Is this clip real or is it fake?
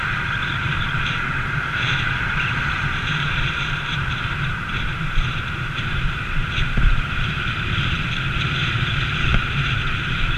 fake